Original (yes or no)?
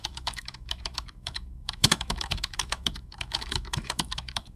no